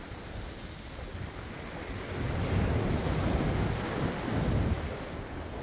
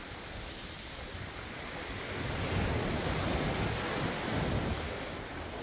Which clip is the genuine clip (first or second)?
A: first